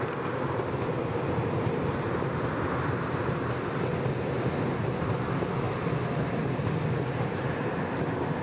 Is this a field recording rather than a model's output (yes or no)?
yes